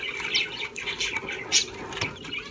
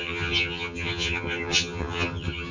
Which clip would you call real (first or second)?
first